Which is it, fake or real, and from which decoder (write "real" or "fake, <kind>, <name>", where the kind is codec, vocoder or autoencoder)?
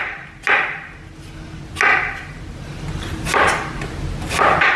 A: real